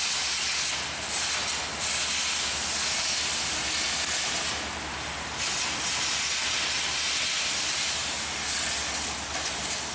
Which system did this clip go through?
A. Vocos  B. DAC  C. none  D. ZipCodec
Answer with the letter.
C